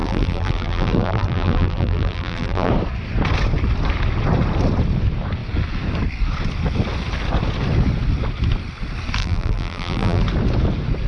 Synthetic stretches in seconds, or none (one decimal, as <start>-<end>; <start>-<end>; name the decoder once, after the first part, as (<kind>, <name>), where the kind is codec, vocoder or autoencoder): 0.0-2.7 (vocoder, BigVGAN v2); 9.2-10.2